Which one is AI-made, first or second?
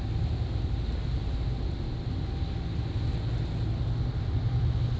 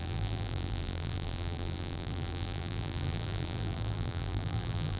second